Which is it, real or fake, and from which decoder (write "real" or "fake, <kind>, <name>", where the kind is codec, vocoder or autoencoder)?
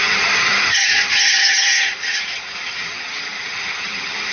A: fake, vocoder, HiFi-GAN